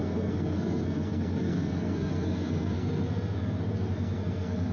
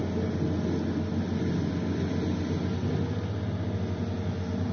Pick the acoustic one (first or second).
second